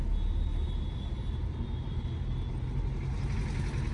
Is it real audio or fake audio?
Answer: real